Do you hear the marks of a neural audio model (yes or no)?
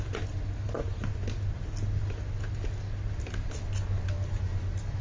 no